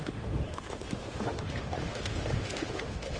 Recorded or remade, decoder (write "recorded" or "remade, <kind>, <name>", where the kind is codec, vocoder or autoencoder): remade, autoencoder, DAC-VAE